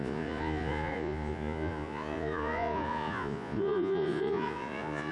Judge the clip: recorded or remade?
remade